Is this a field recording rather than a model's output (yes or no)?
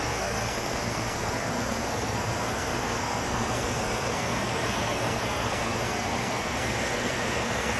no